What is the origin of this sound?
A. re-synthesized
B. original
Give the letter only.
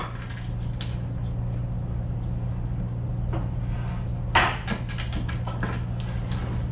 B